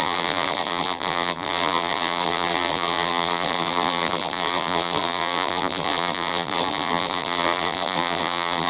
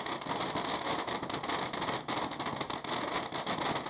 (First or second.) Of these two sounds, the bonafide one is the second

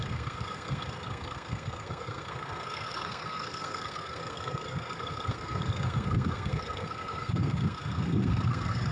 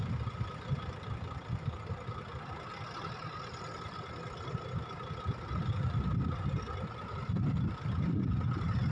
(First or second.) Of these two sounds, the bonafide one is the second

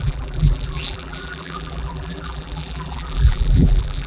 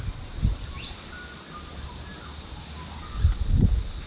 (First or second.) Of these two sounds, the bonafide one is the second